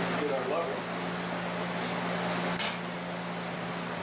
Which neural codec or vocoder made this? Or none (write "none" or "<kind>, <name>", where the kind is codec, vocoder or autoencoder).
none